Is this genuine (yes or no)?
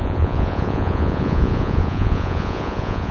no